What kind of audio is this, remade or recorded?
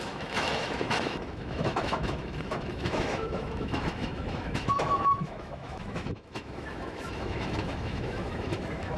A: remade